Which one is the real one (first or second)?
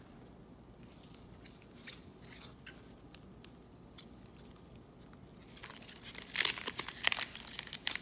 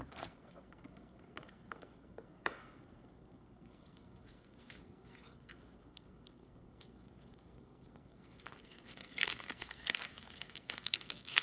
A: first